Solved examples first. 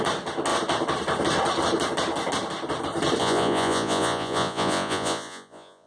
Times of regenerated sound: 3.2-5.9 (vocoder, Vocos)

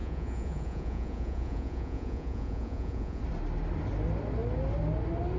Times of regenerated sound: 0.0-3.2 (vocoder, Vocos)

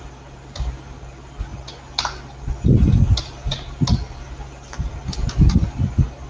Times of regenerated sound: none

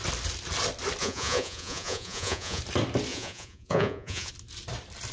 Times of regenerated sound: 1.0-2.6 (vocoder, Vocos); 3.1-4.3